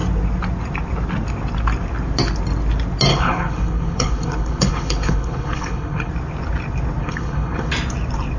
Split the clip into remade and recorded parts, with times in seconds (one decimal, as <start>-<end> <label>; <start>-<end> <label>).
0.0-3.1 recorded; 3.1-6.1 remade; 6.1-7.0 recorded; 7.0-7.7 remade; 7.7-8.4 recorded

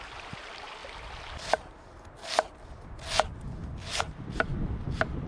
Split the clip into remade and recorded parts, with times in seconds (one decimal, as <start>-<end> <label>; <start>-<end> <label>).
0.0-0.8 remade; 0.8-4.0 recorded; 4.0-5.3 remade